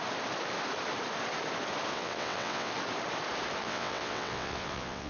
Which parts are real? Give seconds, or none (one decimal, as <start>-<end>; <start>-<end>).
0.0-1.9; 2.7-3.6